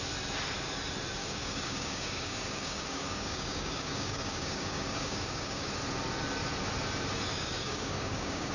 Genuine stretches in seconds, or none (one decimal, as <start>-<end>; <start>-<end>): 0.0-1.2; 5.7-7.3